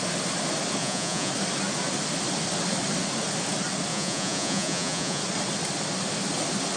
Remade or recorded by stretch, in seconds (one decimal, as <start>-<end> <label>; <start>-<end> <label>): 0.0-0.8 recorded; 0.8-1.3 remade; 1.3-3.9 recorded; 3.9-5.2 remade; 5.2-6.8 recorded